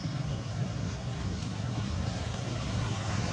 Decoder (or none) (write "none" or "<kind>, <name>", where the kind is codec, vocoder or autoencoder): codec, SNAC